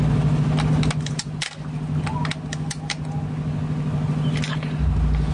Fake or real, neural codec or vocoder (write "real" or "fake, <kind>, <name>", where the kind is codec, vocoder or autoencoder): real